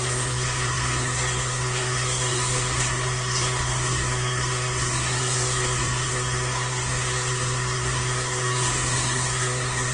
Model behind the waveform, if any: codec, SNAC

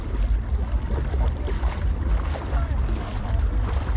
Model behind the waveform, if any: none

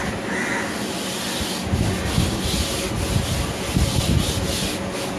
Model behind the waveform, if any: none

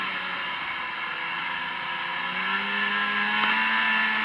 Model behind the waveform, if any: none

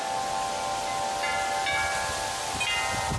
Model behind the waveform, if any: none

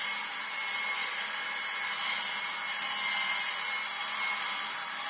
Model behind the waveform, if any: none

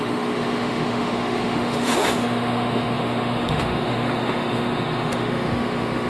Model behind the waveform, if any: autoencoder, DAC-VAE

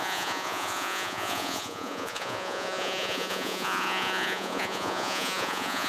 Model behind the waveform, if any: vocoder, Vocos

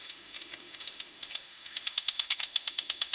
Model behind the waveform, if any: autoencoder, DAC-VAE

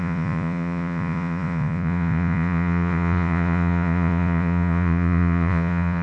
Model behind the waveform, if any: vocoder, Vocos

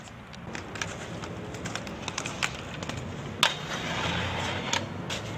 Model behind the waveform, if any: none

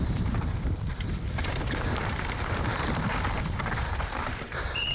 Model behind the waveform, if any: vocoder, BigVGAN v2